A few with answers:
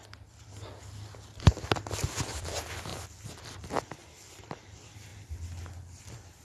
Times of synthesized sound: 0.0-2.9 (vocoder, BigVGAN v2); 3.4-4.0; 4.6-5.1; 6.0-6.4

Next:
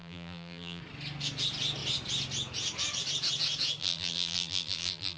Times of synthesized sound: 0.0-0.8 (vocoder, BigVGAN v2); 3.8-5.2

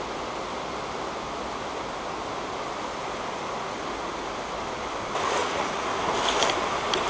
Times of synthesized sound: 5.4-5.9 (vocoder, Vocos)

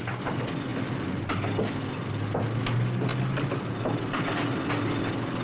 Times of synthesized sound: none